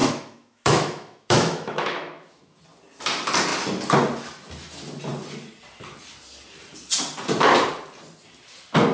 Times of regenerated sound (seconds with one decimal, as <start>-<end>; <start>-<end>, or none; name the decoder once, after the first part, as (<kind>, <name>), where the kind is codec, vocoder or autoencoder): 0.0-2.6 (autoencoder, DAC-VAE)